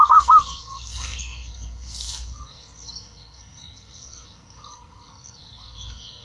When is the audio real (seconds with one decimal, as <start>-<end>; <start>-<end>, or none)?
none